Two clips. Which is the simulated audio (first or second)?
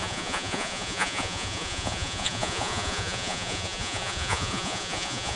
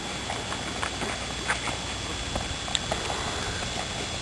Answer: first